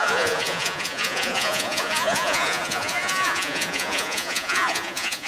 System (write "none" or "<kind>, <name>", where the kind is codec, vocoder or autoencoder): vocoder, Vocos